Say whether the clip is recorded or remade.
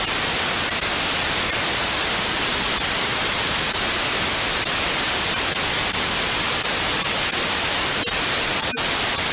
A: recorded